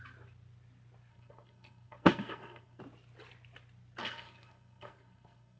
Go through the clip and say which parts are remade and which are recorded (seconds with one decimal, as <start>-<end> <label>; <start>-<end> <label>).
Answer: 0.0-1.1 recorded; 1.1-2.8 remade; 2.8-4.0 recorded; 4.0-5.6 remade

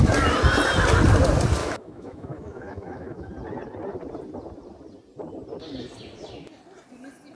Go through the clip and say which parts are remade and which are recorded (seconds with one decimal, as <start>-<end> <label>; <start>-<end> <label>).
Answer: 0.0-1.6 recorded; 1.6-3.3 remade; 3.3-7.4 recorded

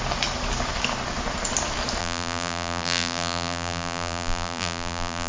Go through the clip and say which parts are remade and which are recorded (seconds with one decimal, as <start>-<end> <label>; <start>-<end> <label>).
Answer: 0.0-2.0 recorded; 2.0-5.3 remade

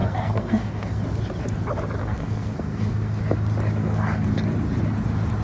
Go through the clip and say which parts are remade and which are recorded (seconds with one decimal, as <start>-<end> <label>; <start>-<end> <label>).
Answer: 0.0-1.0 remade; 1.0-2.0 recorded; 2.0-3.2 remade; 3.2-3.8 recorded; 3.8-4.3 remade; 4.3-5.4 recorded

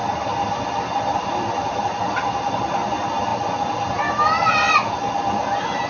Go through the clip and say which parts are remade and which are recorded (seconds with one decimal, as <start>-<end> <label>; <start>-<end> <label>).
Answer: 0.0-5.9 recorded

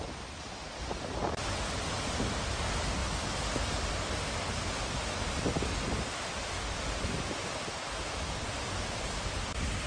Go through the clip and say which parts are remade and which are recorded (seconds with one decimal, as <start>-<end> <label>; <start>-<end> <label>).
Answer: 0.0-1.2 recorded; 1.2-2.1 remade; 2.1-7.4 recorded; 7.4-9.9 remade

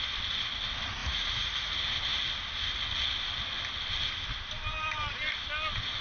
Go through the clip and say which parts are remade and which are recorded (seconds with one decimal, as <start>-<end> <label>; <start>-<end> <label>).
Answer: 0.0-1.0 recorded; 1.0-1.7 remade; 1.7-6.0 recorded

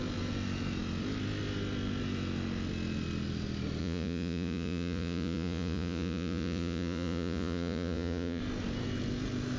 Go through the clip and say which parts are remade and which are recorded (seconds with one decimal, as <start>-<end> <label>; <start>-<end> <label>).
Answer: 0.0-3.8 recorded; 3.8-8.4 remade; 8.4-9.6 recorded